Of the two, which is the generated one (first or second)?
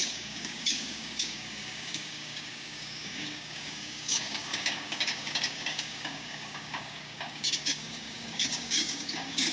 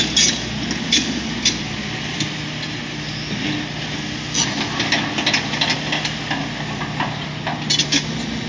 first